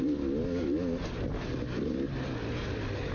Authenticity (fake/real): real